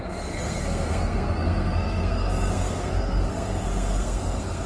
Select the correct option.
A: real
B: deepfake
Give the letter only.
B